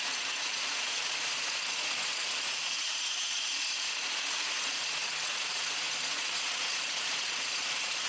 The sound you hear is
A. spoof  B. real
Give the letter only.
A